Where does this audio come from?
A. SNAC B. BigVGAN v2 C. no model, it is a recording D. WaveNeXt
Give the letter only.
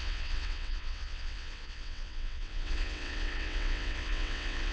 D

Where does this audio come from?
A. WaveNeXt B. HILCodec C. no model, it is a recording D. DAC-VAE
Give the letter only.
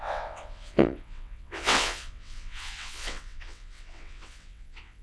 A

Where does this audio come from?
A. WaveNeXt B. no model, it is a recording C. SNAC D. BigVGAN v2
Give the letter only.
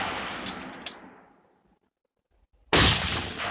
B